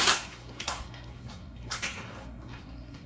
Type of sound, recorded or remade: remade